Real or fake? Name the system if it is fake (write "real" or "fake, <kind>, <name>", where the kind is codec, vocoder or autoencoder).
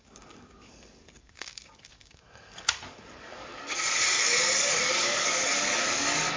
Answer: fake, codec, DAC